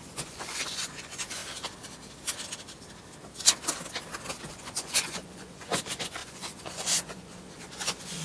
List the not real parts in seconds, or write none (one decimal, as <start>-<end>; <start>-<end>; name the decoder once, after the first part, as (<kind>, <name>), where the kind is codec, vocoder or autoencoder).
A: 0.0-1.4 (vocoder, Vocos); 4.5-8.2